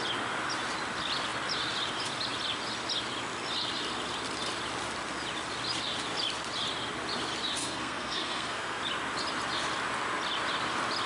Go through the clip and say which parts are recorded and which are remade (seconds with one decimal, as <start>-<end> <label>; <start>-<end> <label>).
0.0-7.6 recorded; 7.6-8.8 remade; 8.8-11.1 recorded

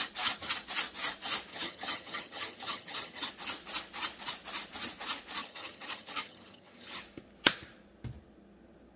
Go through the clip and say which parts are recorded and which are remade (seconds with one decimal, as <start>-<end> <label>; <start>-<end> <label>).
0.0-1.5 recorded; 1.5-3.3 remade; 3.3-5.4 recorded; 5.4-7.0 remade; 7.0-9.0 recorded